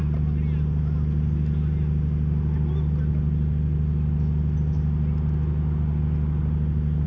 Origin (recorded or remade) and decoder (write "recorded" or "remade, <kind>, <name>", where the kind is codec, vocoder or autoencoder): recorded